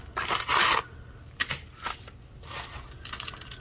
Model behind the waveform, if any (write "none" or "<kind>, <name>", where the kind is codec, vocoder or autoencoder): none